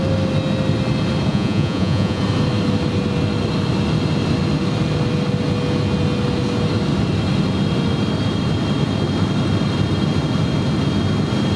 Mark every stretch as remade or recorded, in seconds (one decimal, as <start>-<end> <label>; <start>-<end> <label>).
0.0-1.3 recorded; 1.3-2.2 remade; 2.2-11.6 recorded